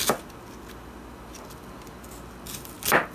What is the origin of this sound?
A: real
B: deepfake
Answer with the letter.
A